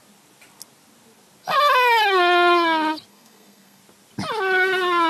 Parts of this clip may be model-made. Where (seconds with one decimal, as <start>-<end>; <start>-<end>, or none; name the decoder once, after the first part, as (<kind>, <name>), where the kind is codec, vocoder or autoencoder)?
3.1-3.8 (codec, SNAC)